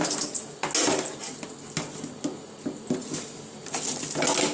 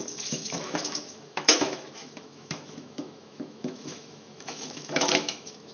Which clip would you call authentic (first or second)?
first